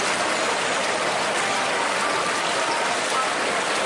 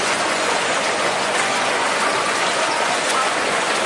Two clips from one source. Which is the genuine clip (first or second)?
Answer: first